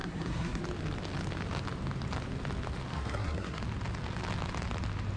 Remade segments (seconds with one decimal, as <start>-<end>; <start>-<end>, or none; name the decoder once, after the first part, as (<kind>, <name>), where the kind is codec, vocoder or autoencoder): 0.0-0.6 (codec, SNAC); 2.9-3.6